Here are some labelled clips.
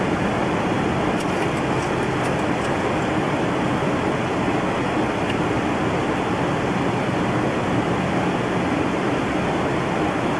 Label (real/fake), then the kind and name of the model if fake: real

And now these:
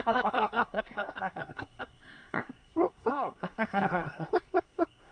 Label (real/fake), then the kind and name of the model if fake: fake, codec, SNAC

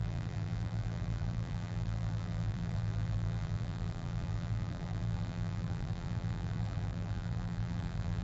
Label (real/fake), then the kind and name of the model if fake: fake, vocoder, BigVGAN v2